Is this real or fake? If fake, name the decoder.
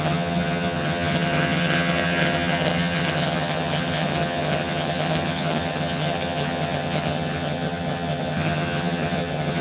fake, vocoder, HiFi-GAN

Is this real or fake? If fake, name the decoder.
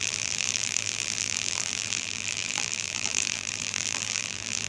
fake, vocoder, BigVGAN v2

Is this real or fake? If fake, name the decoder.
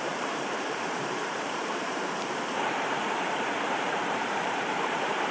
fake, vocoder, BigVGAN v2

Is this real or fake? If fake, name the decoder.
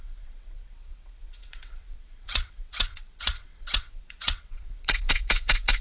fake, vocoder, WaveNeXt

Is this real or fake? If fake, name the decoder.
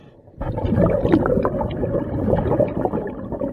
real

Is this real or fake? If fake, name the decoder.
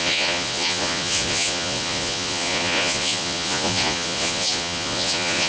fake, vocoder, Vocos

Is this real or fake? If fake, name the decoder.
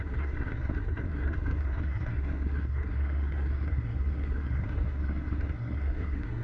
fake, codec, SNAC